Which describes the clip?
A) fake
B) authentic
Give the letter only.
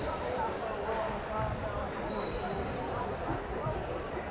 B